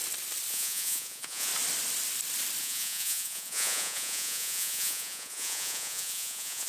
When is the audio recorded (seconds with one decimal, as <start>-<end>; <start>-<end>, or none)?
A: 0.0-0.5; 1.5-2.6